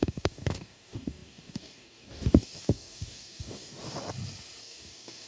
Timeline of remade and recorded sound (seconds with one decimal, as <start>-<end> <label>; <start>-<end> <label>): 0.0-3.8 remade; 3.8-4.6 recorded; 4.6-5.3 remade